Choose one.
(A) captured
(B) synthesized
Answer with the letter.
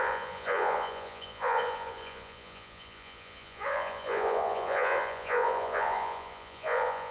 B